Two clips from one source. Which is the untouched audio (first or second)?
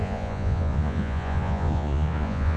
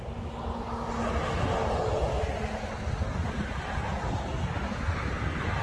second